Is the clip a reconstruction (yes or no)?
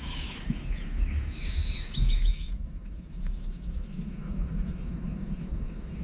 yes